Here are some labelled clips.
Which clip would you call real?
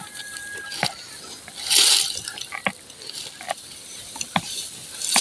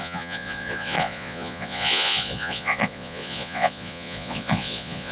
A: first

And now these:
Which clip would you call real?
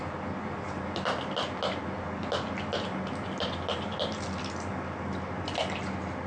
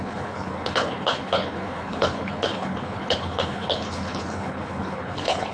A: first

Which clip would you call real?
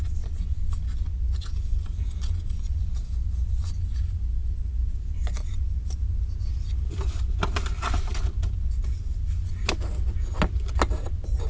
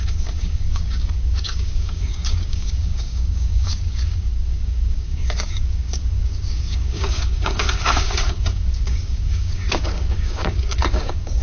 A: first